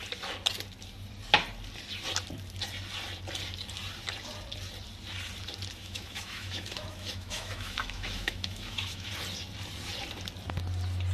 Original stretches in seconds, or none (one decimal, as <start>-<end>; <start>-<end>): 0.0-5.8; 9.1-11.1